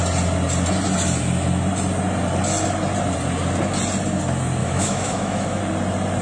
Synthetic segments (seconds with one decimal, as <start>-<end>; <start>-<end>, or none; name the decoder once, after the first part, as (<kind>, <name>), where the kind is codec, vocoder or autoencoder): 4.6-5.6 (autoencoder, DAC-VAE)